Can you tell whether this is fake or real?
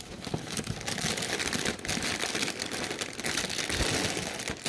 real